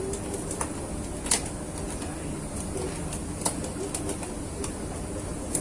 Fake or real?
real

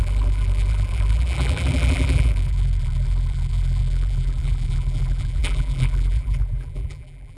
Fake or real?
fake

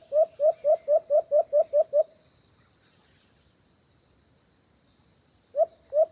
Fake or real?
real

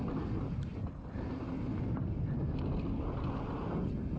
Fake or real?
real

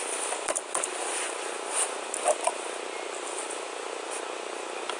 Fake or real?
real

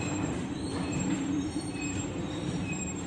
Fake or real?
fake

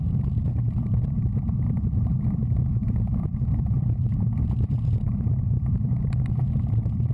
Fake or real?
fake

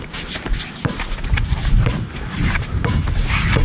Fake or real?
fake